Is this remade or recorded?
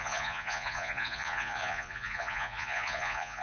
remade